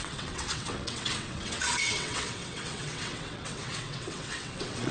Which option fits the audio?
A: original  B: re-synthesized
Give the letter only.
B